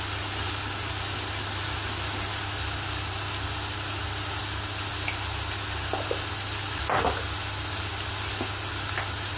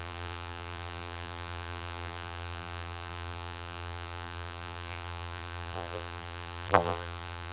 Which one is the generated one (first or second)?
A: second